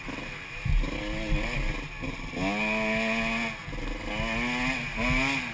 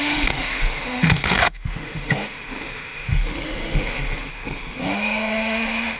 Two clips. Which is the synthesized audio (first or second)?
second